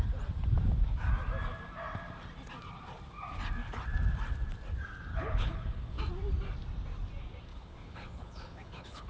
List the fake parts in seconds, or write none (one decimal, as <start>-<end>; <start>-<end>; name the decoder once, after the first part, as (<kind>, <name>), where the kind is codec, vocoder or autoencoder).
5.1-6.0 (codec, HILCodec); 7.5-9.1